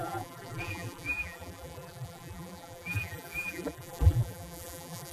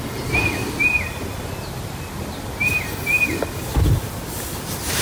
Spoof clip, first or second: first